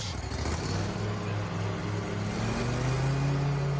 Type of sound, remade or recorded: recorded